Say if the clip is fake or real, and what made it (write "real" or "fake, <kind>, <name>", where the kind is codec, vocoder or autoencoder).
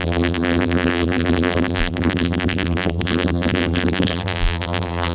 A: fake, vocoder, BigVGAN v2